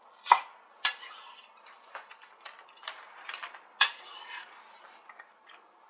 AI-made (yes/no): no